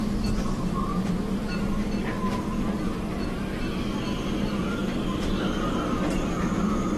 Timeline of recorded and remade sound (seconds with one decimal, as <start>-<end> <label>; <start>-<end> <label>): 0.0-7.0 recorded